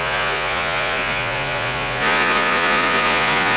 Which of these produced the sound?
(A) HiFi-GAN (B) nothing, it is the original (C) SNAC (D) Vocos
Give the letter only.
D